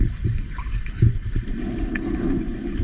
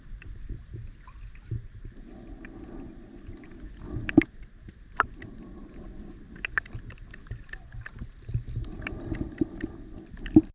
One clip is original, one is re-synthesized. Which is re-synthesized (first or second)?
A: first